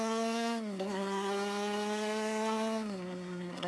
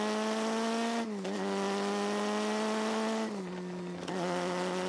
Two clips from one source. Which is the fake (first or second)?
first